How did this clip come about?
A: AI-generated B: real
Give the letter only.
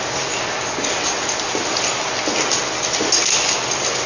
B